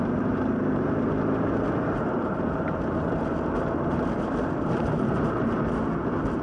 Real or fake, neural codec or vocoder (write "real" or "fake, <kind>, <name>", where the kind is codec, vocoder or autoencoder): fake, vocoder, BigVGAN v2